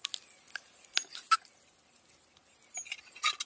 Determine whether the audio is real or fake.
real